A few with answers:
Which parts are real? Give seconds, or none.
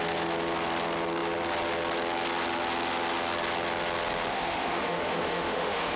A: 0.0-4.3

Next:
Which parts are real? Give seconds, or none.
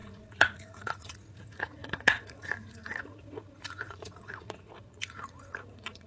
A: none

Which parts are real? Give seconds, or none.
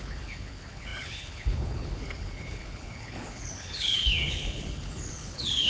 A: none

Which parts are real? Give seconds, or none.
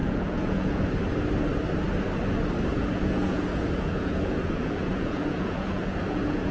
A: 0.9-2.7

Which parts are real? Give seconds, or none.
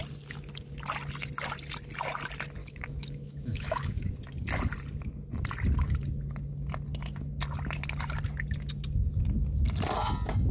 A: 0.0-2.6; 4.1-10.5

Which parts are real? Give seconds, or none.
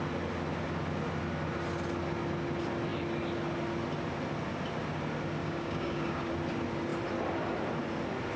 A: 0.0-5.4; 6.3-8.4